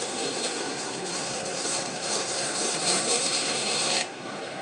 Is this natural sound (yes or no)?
no